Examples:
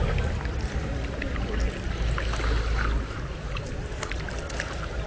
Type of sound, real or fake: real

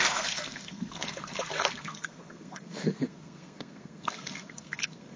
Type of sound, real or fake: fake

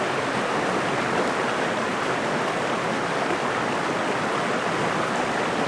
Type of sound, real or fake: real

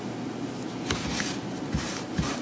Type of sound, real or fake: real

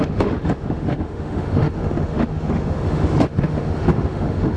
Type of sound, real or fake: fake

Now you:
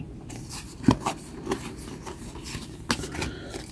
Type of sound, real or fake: real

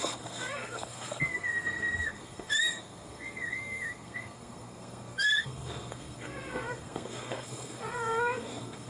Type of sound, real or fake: fake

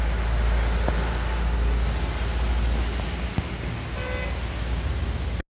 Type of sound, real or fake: real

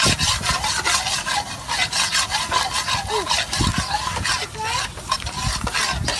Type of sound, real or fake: real